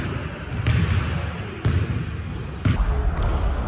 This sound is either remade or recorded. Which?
recorded